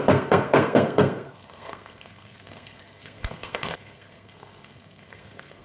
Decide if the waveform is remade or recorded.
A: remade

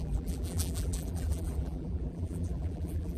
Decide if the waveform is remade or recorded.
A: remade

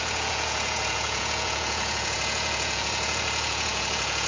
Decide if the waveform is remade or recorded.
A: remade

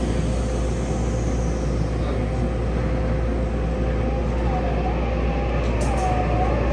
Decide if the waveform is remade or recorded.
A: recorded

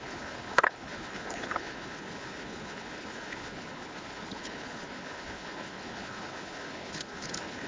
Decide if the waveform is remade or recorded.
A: remade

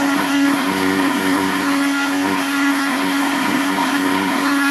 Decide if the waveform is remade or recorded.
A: remade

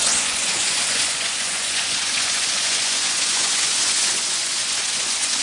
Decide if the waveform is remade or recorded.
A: remade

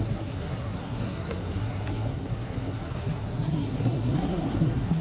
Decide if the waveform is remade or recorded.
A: remade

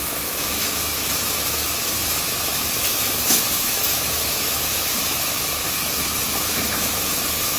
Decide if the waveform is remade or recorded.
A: remade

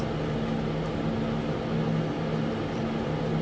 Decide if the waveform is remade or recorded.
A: recorded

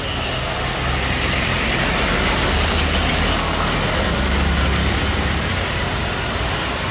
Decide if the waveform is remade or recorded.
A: recorded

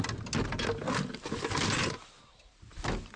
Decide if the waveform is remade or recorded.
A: recorded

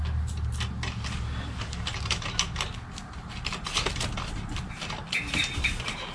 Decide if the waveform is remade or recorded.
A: recorded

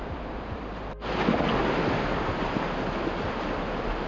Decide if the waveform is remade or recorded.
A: recorded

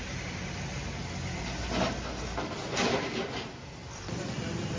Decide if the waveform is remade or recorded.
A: recorded